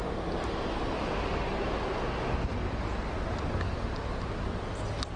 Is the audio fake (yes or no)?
no